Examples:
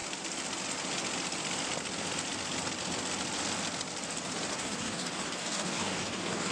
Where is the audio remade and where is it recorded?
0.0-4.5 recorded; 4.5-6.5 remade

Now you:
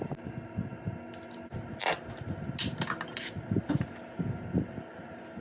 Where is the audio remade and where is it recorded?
0.0-5.4 recorded

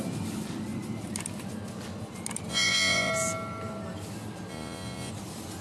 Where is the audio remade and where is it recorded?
0.0-2.5 recorded; 2.5-3.1 remade; 3.1-4.5 recorded; 4.5-5.1 remade; 5.1-5.6 recorded